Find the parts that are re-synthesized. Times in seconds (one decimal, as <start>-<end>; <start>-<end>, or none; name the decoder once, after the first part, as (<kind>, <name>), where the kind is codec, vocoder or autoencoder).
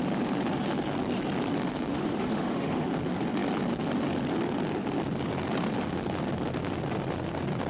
1.9-2.9 (autoencoder, DAC-VAE)